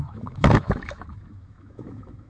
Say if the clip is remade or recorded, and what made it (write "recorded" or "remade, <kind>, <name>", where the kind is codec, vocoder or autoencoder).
remade, autoencoder, DAC-VAE